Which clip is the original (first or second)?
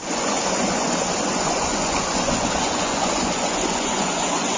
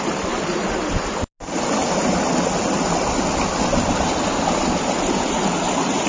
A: second